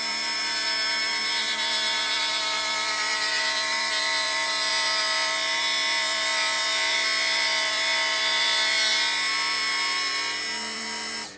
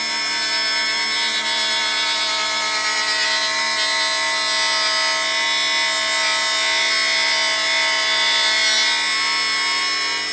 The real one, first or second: second